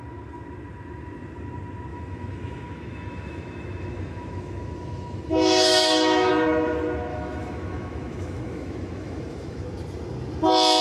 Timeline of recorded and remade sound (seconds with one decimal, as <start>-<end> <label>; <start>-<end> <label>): 0.0-1.9 recorded; 1.9-6.3 remade; 6.3-7.1 recorded; 7.1-9.6 remade; 9.6-10.8 recorded